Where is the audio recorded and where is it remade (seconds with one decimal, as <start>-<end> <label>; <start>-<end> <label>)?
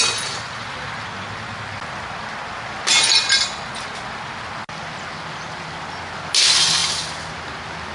0.0-7.9 recorded